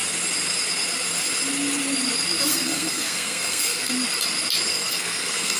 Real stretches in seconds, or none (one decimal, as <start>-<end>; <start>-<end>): 0.0-2.5; 3.9-4.7